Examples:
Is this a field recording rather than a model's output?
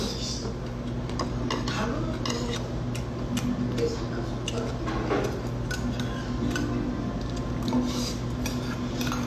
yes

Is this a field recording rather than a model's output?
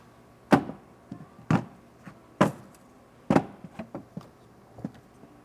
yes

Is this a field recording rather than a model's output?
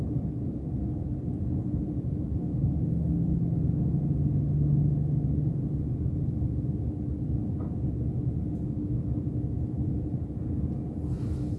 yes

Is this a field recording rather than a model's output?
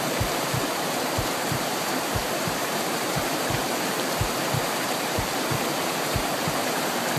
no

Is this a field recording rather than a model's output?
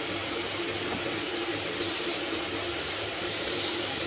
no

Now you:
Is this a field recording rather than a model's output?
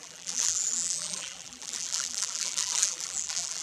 no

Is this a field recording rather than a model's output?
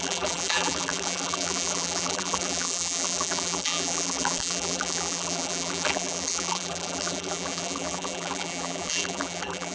no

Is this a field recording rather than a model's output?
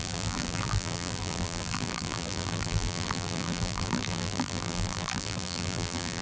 no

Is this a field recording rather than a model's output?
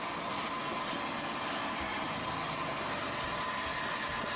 yes